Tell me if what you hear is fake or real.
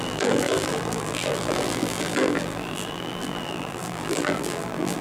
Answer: fake